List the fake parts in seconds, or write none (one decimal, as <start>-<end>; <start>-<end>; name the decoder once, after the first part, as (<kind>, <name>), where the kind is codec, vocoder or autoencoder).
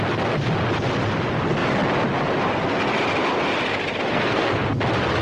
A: 4.1-4.6 (codec, SNAC)